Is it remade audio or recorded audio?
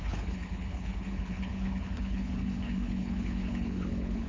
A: remade